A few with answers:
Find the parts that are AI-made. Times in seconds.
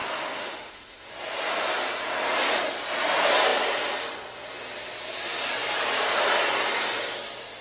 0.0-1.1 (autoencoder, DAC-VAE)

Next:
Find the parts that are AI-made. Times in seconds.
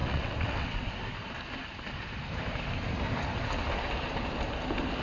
0.0-0.9 (vocoder, WaveNeXt)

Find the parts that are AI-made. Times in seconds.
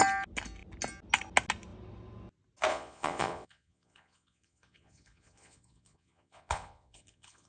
2.7-7.5 (vocoder, Vocos)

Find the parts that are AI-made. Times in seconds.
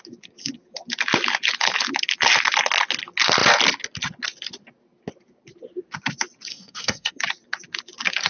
6.5-7.2 (codec, SNAC)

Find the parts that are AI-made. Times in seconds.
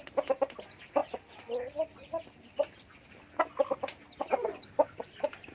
0.0-1.0 (vocoder, BigVGAN v2); 4.3-5.5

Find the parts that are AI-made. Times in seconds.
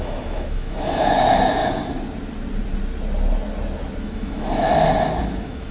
0.0-1.6 (autoencoder, DAC-VAE); 4.0-4.7; 5.2-5.7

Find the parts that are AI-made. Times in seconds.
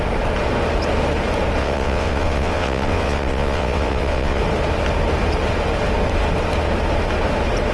1.6-4.4 (vocoder, WaveNeXt)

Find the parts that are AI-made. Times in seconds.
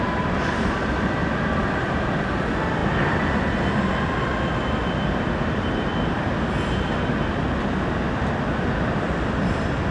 none